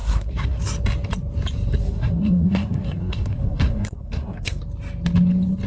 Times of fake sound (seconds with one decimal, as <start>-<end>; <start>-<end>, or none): 0.0-0.6; 1.8-4.6

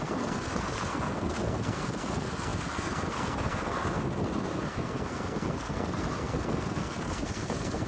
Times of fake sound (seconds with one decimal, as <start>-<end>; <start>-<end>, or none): 0.0-7.9

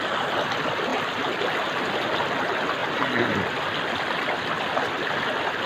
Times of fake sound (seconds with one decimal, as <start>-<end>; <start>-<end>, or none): none

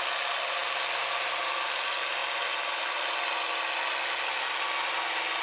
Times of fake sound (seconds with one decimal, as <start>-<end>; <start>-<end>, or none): none

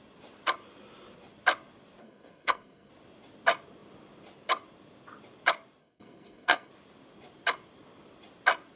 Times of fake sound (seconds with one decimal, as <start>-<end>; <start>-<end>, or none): 2.0-2.9; 5.8-6.7

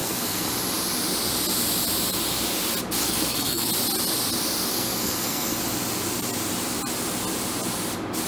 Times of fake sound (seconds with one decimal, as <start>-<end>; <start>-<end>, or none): 0.0-0.5; 3.0-3.7; 4.7-5.6